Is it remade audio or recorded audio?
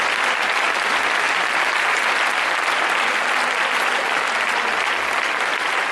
recorded